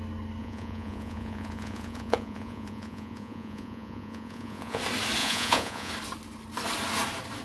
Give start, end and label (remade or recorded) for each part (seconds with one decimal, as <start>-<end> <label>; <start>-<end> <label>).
0.0-0.4 recorded; 0.4-4.8 remade; 4.8-5.2 recorded; 5.2-5.9 remade; 5.9-7.4 recorded